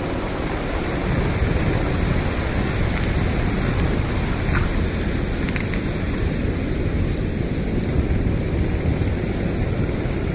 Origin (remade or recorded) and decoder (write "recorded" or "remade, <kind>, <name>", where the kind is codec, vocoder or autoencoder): recorded